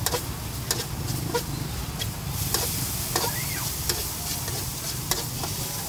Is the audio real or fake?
real